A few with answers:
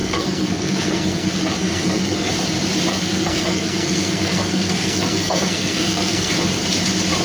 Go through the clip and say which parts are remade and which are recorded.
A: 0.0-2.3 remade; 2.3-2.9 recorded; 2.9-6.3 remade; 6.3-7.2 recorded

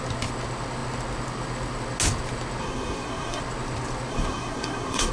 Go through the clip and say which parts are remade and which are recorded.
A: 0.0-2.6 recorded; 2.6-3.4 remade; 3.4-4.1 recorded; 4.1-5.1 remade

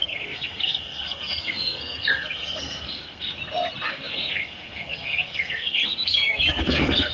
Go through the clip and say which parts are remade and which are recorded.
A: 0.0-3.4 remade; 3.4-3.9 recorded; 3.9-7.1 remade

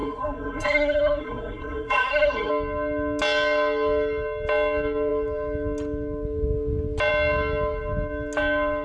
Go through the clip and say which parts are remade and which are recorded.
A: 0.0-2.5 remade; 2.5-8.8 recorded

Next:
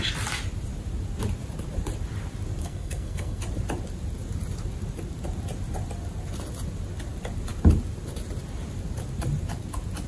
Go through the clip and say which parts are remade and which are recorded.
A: 0.0-2.6 recorded; 2.6-3.4 remade; 3.4-10.1 recorded

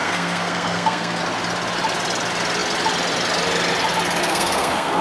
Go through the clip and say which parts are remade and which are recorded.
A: 0.0-1.2 remade; 1.2-4.2 recorded; 4.2-5.0 remade

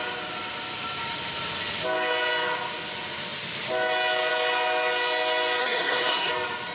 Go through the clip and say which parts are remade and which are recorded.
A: 0.0-5.6 recorded; 5.6-6.3 remade; 6.3-6.7 recorded